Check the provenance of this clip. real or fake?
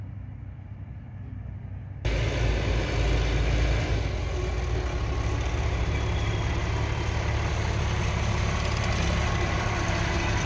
real